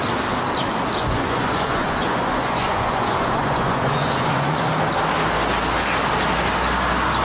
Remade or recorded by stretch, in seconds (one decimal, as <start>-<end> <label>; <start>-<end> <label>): 0.0-1.0 recorded; 1.0-4.7 remade; 4.7-7.2 recorded